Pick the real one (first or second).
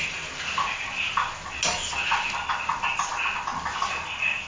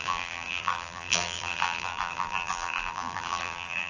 first